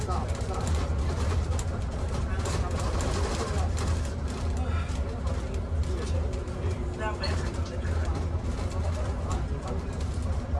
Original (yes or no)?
yes